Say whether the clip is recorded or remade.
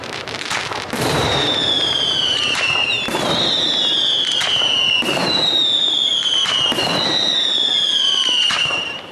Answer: remade